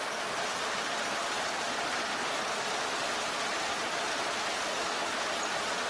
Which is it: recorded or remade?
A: recorded